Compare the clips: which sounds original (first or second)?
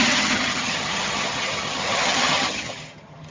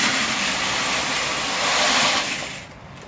second